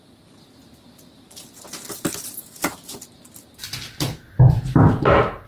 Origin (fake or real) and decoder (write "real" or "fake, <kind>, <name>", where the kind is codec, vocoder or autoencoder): real